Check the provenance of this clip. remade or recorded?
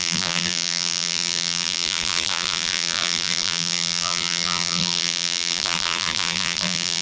remade